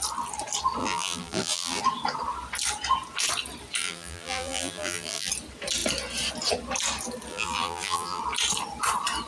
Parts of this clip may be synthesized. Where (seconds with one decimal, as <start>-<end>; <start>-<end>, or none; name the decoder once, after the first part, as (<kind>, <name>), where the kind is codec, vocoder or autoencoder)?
0.8-1.8 (vocoder, BigVGAN v2); 3.8-5.3; 7.3-8.2